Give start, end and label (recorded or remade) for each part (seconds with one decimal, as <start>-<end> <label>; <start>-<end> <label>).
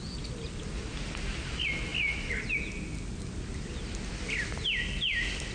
0.0-5.5 recorded